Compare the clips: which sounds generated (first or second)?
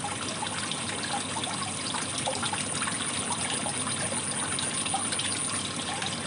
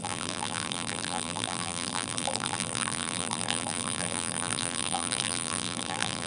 second